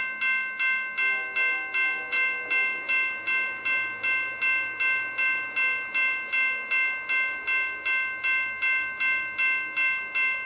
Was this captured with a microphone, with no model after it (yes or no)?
yes